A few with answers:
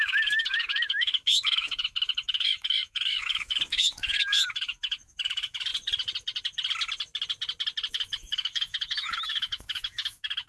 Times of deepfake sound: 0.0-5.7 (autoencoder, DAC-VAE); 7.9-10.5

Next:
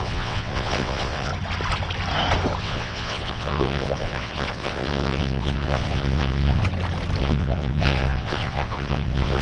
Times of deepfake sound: 0.0-1.3 (vocoder, WaveNeXt); 2.6-6.6; 7.2-9.4

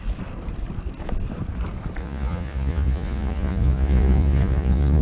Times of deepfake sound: 2.0-5.0 (vocoder, Vocos)

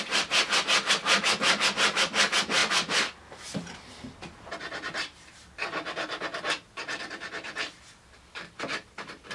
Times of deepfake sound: none